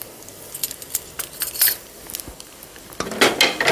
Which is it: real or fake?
real